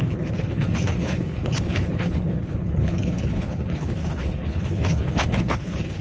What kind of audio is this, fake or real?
fake